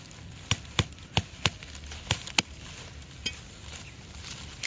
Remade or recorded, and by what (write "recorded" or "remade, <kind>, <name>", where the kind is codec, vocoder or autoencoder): recorded